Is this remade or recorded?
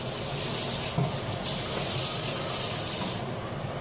recorded